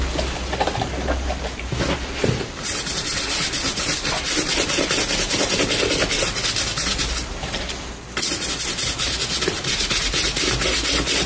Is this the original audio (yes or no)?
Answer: yes